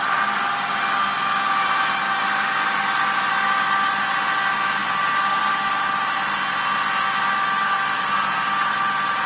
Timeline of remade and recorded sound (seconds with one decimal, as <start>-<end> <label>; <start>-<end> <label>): 0.0-9.3 recorded